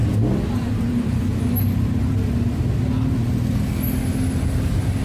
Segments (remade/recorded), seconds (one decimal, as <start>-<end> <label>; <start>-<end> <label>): 0.0-5.0 recorded

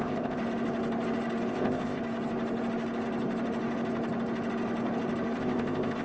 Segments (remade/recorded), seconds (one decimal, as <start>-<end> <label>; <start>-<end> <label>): 0.0-0.4 remade; 0.4-1.5 recorded; 1.5-2.0 remade; 2.0-5.4 recorded; 5.4-6.0 remade

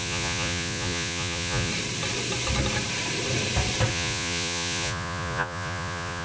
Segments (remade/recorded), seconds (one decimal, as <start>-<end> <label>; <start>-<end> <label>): 0.0-1.7 remade; 1.7-3.9 recorded; 3.9-6.2 remade

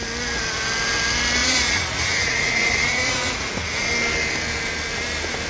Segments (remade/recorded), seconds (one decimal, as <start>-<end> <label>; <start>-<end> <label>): 0.0-1.4 recorded; 1.4-3.9 remade; 3.9-5.5 recorded

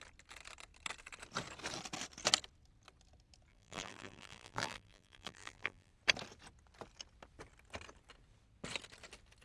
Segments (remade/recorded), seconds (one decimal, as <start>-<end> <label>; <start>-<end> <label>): 0.0-3.5 recorded; 3.5-5.9 remade; 5.9-9.4 recorded

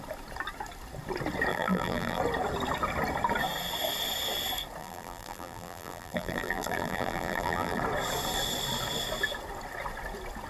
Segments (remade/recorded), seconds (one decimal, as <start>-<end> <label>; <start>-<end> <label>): 0.0-1.5 recorded; 1.5-2.2 remade; 2.2-4.8 recorded; 4.8-7.8 remade; 7.8-10.5 recorded

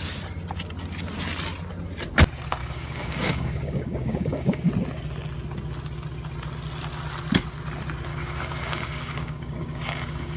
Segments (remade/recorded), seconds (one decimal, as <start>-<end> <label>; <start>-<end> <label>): 0.0-2.6 recorded; 2.6-4.7 remade; 4.7-8.1 recorded; 8.1-10.4 remade